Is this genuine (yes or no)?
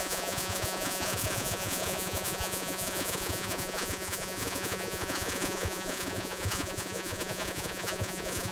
no